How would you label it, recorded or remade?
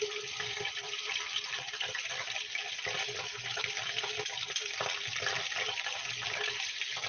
recorded